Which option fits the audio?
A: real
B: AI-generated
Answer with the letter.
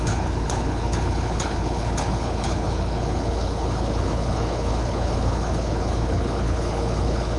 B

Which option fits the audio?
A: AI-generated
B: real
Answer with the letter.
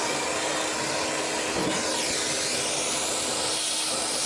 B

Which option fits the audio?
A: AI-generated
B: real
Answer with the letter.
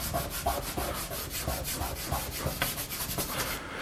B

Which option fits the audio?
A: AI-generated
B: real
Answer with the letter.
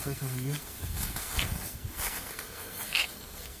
A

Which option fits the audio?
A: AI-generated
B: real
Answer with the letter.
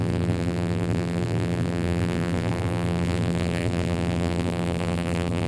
A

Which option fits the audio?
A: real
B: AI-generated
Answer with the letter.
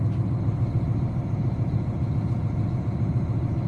A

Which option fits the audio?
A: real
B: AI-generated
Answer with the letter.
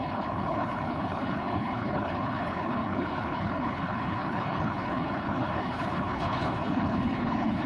B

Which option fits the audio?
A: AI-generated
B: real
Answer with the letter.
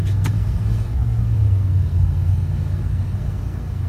A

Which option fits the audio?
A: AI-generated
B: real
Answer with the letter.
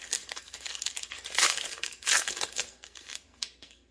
A